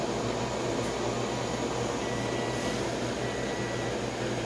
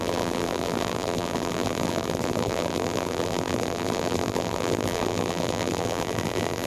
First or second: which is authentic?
first